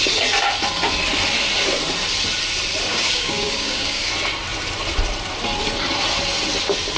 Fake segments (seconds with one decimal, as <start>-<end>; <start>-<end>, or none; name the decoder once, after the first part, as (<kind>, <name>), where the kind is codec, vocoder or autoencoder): 2.9-4.1 (codec, DAC)